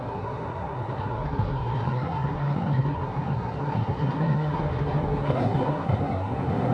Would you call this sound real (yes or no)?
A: no